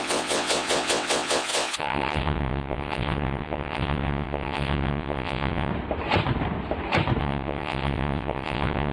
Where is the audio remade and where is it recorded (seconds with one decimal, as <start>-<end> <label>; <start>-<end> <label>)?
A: 0.0-5.7 remade; 5.7-7.2 recorded; 7.2-8.9 remade